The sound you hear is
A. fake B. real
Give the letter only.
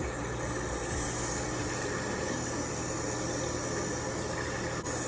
B